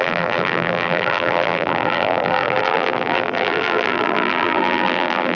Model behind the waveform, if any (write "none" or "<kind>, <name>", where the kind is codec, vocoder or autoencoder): vocoder, BigVGAN v2